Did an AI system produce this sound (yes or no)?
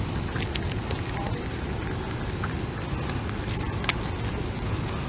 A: no